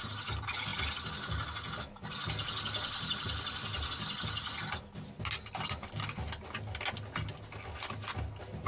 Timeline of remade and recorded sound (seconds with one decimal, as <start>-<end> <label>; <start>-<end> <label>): 0.0-8.7 recorded